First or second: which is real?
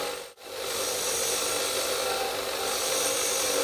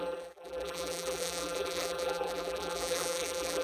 first